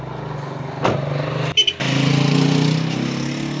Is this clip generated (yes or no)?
no